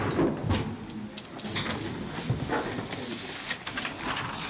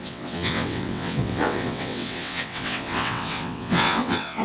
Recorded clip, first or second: first